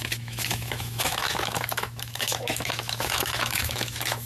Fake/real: fake